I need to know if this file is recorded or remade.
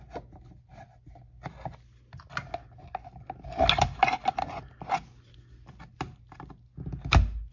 recorded